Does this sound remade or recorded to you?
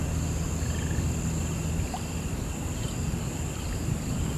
recorded